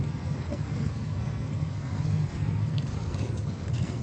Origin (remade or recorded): remade